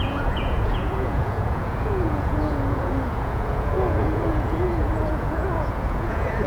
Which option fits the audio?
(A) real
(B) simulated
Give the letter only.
B